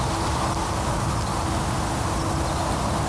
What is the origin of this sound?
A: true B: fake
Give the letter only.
A